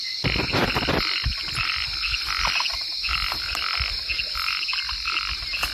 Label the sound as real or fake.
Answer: real